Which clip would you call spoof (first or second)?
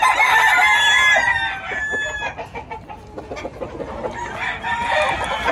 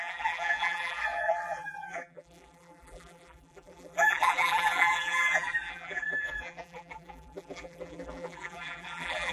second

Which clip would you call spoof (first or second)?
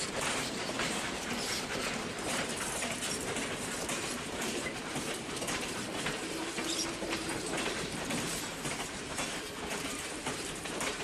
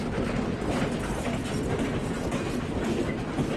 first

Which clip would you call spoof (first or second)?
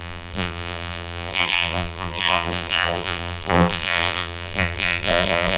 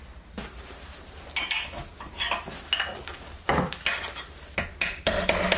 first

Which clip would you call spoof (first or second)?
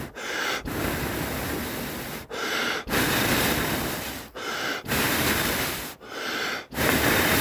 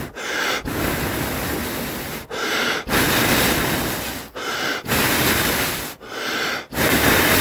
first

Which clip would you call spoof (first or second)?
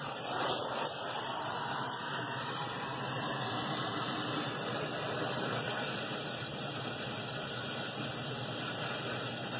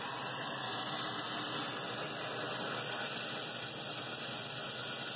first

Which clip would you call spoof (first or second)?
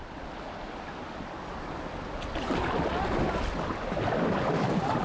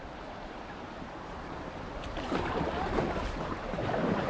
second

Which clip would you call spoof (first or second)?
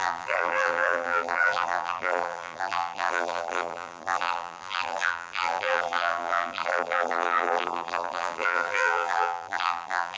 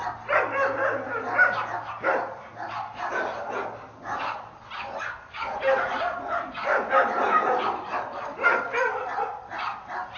first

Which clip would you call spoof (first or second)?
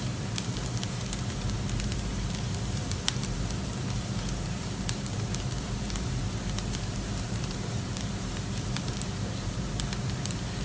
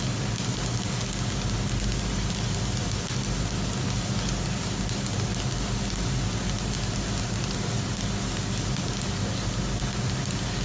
first